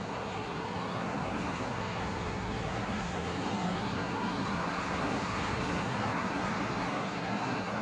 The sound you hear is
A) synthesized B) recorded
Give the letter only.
A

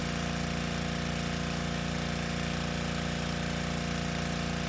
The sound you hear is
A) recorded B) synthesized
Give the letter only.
A